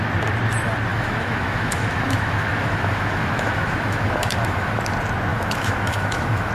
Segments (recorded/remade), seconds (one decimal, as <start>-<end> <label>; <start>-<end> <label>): 0.0-0.9 recorded; 0.9-4.8 remade; 4.8-5.3 recorded; 5.3-6.5 remade

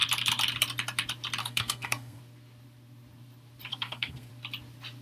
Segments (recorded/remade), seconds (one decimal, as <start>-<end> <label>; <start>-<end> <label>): 0.0-1.4 recorded; 1.4-2.2 remade; 2.2-3.7 recorded; 3.7-4.3 remade; 4.3-5.0 recorded